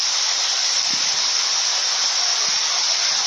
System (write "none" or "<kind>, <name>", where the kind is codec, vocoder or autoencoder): none